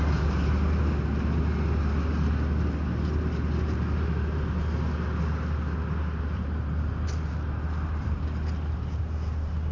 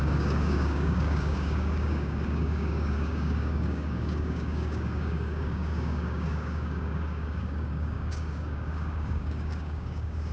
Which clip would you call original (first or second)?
first